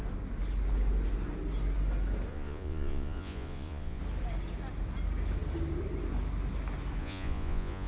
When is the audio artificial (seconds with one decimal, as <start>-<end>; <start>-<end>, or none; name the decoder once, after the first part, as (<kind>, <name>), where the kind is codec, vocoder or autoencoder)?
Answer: 2.3-4.0 (vocoder, Vocos); 7.0-7.9